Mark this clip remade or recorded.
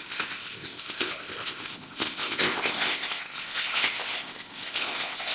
remade